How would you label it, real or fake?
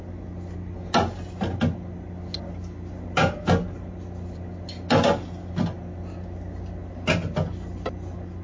real